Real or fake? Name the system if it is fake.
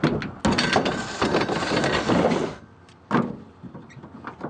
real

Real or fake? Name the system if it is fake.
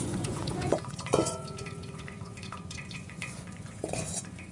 fake, vocoder, Vocos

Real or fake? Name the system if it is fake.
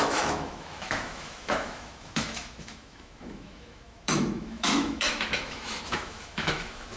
fake, autoencoder, DAC-VAE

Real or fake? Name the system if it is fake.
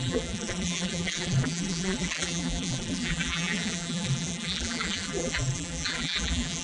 fake, vocoder, BigVGAN v2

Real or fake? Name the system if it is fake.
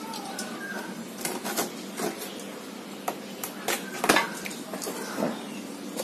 real